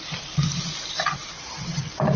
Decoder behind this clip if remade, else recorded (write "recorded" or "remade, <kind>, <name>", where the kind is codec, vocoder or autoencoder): recorded